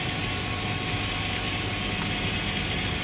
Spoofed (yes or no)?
no